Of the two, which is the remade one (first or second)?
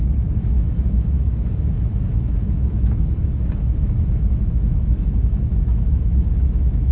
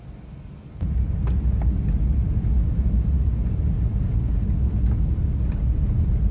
first